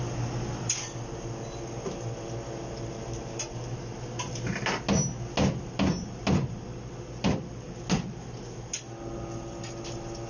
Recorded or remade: recorded